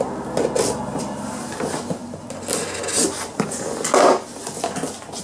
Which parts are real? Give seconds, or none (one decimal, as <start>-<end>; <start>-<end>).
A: 0.0-5.2